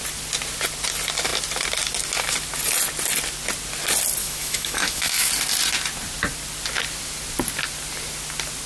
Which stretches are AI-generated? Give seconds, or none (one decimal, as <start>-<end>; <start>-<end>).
4.2-5.3